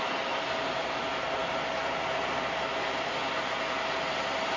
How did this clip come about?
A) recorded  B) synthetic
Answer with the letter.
A